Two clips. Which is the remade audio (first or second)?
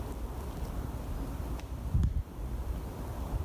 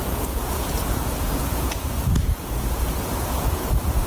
second